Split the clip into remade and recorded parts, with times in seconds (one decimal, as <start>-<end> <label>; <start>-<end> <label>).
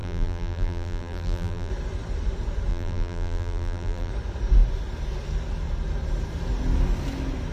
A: 0.0-1.7 remade; 1.7-2.7 recorded; 2.7-4.1 remade; 4.1-7.5 recorded